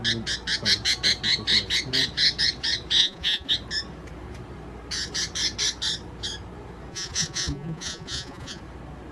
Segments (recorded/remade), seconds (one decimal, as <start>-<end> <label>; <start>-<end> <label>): 0.0-3.0 recorded; 3.0-3.5 remade; 3.5-6.9 recorded; 6.9-8.6 remade; 8.6-9.1 recorded